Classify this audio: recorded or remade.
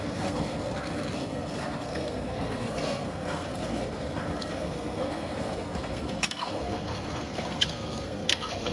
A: remade